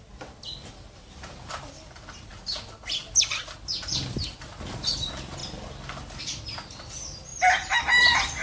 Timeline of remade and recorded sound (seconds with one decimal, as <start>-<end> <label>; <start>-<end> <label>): 0.0-8.4 recorded